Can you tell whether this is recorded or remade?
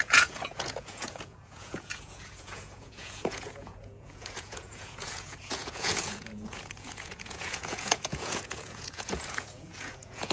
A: remade